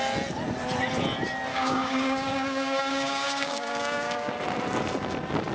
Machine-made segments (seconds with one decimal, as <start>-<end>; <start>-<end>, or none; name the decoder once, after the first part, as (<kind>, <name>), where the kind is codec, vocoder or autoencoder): 1.5-4.3 (codec, DAC)